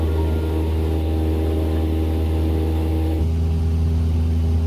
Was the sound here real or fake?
real